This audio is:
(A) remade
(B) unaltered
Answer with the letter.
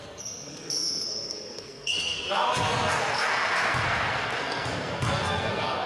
A